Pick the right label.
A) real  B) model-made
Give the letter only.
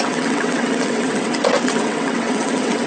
B